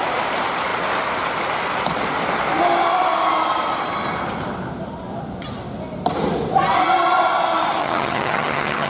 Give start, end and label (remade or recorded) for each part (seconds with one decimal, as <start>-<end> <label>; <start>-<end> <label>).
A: 0.0-7.8 recorded; 7.8-8.9 remade